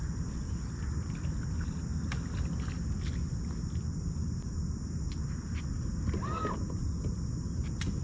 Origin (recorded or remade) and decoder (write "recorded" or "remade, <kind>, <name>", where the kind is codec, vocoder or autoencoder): recorded